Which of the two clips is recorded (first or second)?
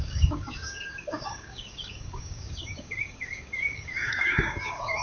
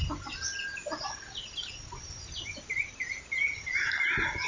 second